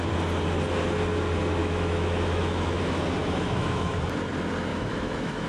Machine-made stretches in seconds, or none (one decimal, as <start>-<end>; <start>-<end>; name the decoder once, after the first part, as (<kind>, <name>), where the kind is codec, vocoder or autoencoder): 1.6-2.8 (autoencoder, DAC-VAE); 3.2-4.0; 4.7-5.5